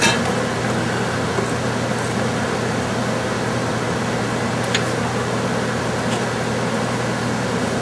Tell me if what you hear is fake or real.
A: real